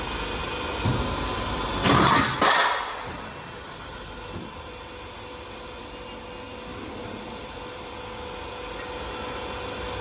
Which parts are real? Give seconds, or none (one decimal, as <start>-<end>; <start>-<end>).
0.0-6.7; 7.9-10.0